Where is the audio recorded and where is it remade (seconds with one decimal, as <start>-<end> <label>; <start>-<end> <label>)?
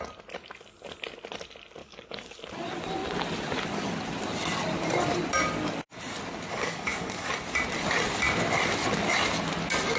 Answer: 0.0-1.8 recorded; 1.8-2.4 remade; 2.4-6.5 recorded; 6.5-7.3 remade; 7.3-10.0 recorded